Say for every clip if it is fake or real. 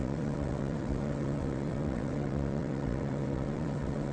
fake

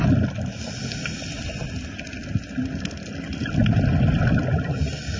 real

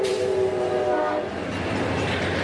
fake